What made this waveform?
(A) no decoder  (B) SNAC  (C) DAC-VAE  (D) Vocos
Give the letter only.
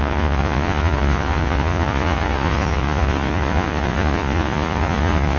D